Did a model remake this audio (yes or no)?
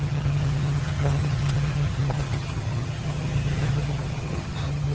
yes